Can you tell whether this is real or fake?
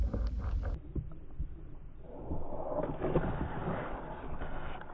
real